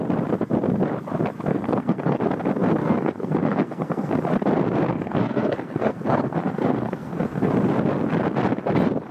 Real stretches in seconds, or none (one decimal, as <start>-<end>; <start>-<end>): 0.0-1.5; 2.2-2.8; 4.1-4.9; 7.5-9.1